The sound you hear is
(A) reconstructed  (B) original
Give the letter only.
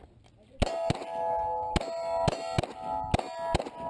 B